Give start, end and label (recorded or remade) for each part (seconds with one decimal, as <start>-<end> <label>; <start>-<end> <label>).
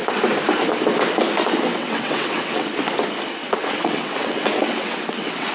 0.0-1.8 recorded; 1.8-2.7 remade; 2.7-3.4 recorded; 3.4-5.5 remade